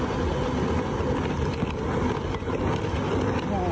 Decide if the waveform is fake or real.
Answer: real